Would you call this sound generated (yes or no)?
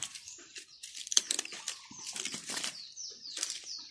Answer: yes